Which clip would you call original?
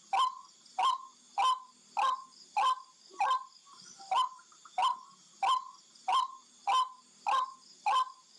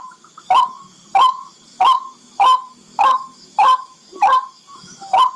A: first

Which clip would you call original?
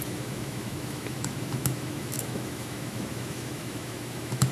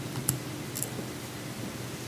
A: second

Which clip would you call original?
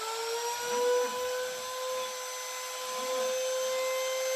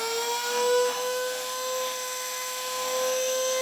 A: first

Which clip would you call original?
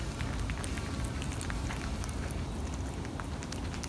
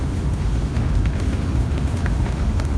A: first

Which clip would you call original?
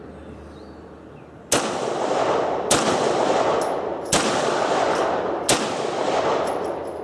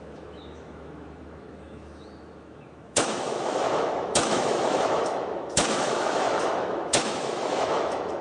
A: first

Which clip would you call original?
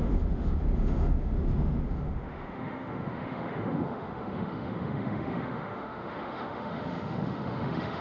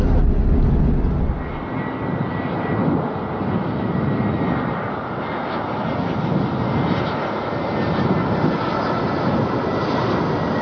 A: second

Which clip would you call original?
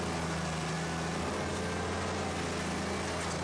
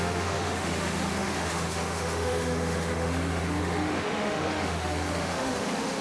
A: first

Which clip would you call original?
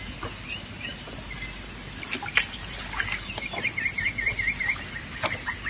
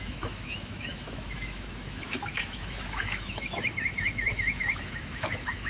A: first